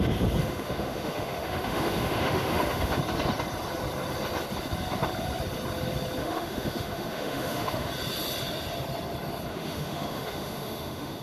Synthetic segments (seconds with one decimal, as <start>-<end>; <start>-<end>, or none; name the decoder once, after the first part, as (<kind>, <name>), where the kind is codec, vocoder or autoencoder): 0.4-3.0 (autoencoder, DAC-VAE); 6.2-7.9; 9.5-11.2